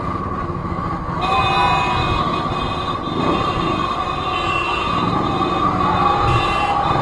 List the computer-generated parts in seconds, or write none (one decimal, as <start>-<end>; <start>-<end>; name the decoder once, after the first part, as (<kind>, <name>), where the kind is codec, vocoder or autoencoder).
0.6-1.4 (autoencoder, DAC-VAE)